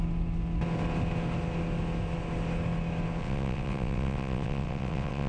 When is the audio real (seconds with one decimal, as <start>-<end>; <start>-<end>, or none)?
0.0-3.2